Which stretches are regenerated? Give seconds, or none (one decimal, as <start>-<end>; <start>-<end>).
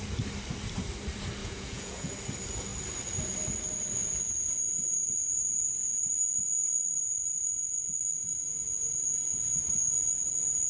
1.4-2.1